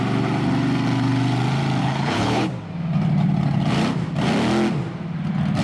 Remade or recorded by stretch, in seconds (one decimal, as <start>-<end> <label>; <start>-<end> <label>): 0.0-1.8 recorded; 1.8-2.5 remade; 2.5-5.6 recorded